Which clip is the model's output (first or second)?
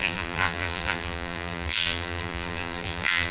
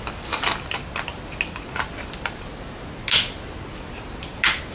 first